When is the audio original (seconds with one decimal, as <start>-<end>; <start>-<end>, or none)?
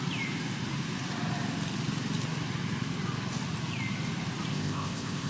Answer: 0.0-4.5